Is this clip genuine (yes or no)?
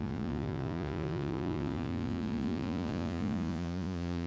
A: no